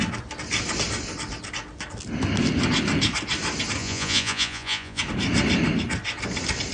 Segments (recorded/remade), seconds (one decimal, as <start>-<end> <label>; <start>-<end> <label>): 0.0-3.8 recorded; 3.8-5.0 remade; 5.0-6.7 recorded